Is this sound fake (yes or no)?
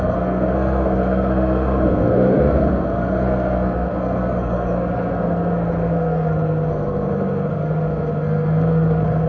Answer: yes